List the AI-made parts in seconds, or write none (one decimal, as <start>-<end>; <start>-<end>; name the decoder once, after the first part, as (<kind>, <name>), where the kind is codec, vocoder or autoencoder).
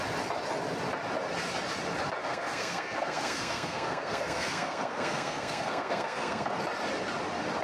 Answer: 2.2-6.6 (codec, SNAC)